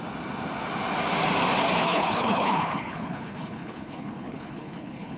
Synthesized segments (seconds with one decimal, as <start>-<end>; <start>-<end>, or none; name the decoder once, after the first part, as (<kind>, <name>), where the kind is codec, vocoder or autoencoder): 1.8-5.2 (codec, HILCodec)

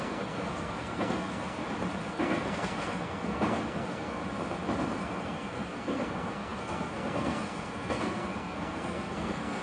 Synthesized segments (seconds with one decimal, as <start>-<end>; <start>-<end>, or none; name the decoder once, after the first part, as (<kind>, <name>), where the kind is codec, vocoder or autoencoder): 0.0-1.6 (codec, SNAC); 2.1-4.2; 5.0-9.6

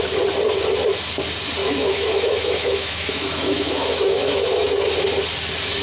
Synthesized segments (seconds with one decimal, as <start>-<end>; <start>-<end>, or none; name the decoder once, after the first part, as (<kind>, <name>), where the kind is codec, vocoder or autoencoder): 1.6-4.7 (autoencoder, DAC-VAE)

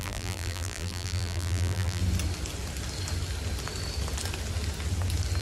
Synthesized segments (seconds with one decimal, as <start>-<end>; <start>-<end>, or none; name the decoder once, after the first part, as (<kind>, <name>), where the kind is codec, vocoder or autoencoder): 0.0-2.0 (vocoder, BigVGAN v2)

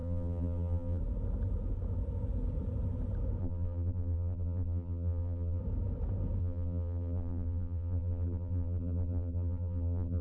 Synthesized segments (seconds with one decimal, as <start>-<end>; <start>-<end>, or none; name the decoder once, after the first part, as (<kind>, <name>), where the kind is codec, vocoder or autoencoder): 0.0-1.0 (vocoder, BigVGAN v2); 3.4-5.6; 6.4-10.2

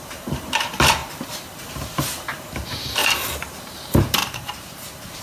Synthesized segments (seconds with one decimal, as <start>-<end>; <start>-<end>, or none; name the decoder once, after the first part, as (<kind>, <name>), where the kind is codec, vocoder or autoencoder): 0.0-1.0 (vocoder, BigVGAN v2); 1.6-3.0; 3.7-5.2